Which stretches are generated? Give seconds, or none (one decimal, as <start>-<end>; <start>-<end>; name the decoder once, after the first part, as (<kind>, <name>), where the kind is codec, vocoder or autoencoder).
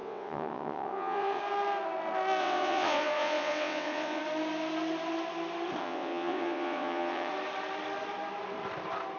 0.0-1.4 (vocoder, WaveNeXt); 2.4-4.2; 5.8-7.3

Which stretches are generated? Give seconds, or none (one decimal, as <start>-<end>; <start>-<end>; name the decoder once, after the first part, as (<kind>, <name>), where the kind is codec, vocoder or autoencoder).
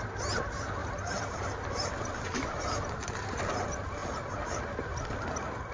0.8-3.4 (vocoder, BigVGAN v2)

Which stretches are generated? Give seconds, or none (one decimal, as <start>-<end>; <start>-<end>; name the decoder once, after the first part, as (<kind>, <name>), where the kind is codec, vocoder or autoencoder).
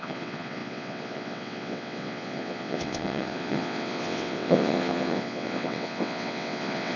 0.0-7.0 (vocoder, WaveNeXt)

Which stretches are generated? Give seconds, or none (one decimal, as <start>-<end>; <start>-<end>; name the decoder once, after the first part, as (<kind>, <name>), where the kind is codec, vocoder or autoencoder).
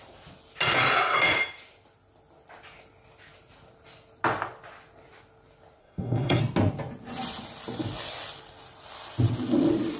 5.8-6.4 (codec, SNAC)